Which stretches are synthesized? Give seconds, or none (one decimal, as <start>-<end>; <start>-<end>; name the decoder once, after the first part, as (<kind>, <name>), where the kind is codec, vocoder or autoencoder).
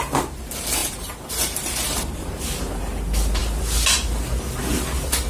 0.8-2.4 (vocoder, BigVGAN v2)